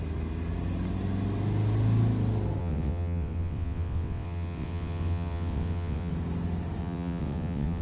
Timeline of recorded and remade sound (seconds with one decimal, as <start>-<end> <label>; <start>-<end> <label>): 0.0-2.6 recorded; 2.6-6.1 remade; 6.1-6.8 recorded; 6.8-7.8 remade